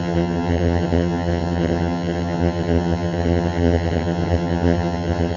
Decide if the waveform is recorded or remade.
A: remade